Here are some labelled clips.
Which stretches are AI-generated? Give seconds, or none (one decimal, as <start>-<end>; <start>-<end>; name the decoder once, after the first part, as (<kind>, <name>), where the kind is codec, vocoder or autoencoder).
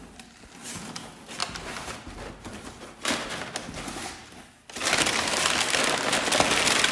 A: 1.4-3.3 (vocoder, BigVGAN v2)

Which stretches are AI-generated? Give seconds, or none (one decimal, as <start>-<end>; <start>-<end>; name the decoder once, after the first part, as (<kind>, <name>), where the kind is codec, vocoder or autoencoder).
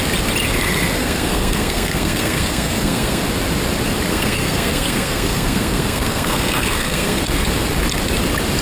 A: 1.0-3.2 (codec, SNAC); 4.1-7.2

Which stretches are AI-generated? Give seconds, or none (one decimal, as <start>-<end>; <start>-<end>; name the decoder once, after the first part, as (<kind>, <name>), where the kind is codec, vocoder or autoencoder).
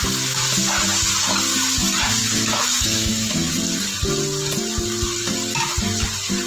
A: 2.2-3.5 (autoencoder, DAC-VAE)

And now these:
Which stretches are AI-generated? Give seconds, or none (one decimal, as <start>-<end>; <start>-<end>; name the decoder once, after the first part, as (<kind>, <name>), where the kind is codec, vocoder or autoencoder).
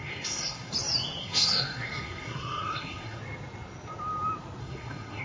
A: 0.0-0.7 (codec, SNAC); 1.2-3.2; 4.6-5.2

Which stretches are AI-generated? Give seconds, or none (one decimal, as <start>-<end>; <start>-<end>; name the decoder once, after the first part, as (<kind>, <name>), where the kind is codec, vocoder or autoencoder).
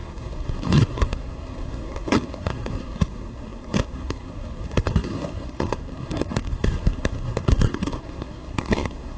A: 0.0-9.2 (codec, SNAC)